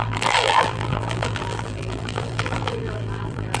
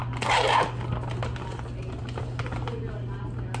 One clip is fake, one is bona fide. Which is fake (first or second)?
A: first